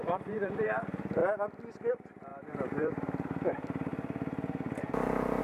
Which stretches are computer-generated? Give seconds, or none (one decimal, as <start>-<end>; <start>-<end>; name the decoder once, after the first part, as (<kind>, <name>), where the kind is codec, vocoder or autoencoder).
0.0-1.2 (vocoder, BigVGAN v2); 1.9-3.9

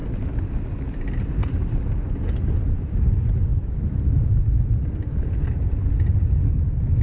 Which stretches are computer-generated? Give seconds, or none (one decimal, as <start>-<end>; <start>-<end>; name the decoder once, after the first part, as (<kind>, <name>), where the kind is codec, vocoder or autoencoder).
none

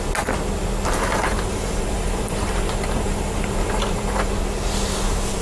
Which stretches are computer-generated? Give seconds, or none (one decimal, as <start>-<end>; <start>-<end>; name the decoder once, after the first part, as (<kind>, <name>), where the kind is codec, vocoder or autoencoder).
1.1-4.3 (vocoder, BigVGAN v2)